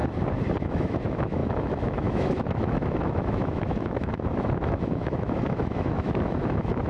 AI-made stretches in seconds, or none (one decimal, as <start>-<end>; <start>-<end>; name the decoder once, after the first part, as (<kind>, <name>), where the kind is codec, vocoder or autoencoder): 0.6-6.9 (autoencoder, DAC-VAE)